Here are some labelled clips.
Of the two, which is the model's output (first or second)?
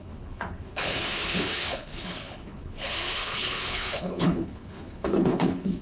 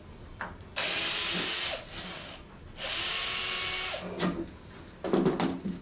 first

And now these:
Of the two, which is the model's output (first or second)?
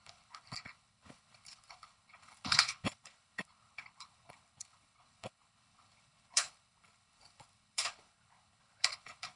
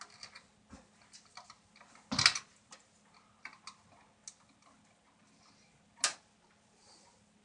first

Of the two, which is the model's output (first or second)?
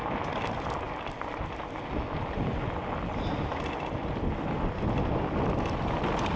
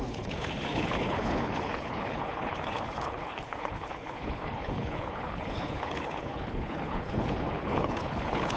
second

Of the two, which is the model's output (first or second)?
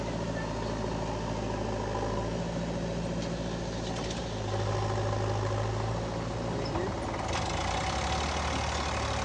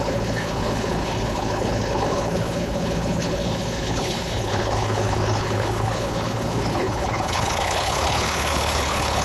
second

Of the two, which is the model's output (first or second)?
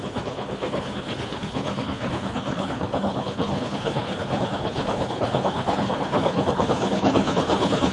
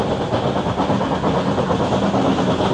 first